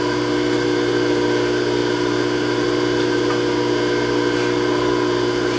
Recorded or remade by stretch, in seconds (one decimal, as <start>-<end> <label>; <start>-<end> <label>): 0.0-5.6 recorded